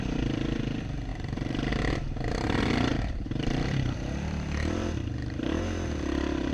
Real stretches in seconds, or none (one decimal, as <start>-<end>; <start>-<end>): 0.0-1.1; 1.7-2.9

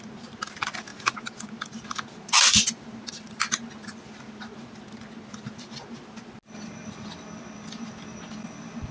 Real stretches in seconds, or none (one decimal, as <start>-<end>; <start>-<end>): 0.0-8.9

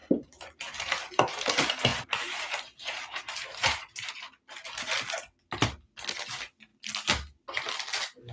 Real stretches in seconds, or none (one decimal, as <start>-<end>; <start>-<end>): 0.6-1.9; 4.1-8.3

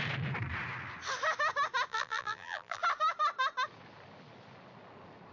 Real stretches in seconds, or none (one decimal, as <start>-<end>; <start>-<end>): 0.0-1.9; 2.8-5.3

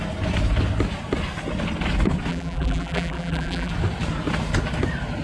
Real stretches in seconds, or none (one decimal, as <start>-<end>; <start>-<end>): 0.0-2.3; 3.7-5.2

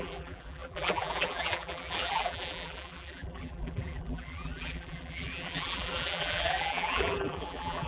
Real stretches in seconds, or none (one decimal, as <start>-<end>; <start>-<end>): none